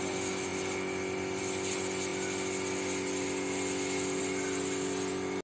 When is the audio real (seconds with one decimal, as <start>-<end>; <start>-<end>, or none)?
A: 0.0-5.4